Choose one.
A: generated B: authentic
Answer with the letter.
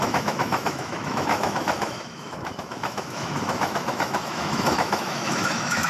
A